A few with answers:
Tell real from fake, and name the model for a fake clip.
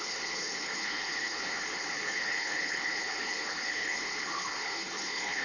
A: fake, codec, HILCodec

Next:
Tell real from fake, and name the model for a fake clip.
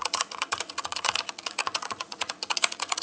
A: fake, vocoder, Vocos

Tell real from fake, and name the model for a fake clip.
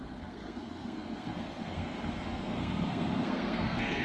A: fake, codec, SNAC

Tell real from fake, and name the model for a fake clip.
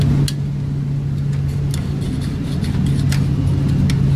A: real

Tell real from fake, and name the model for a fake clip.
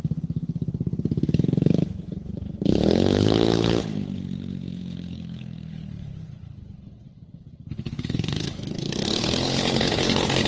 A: fake, codec, HILCodec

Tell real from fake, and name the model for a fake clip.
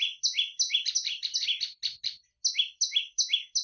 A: real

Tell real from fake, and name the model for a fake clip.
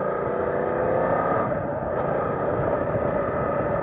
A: real